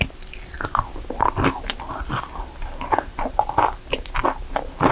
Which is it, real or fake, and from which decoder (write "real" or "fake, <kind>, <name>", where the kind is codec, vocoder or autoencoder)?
real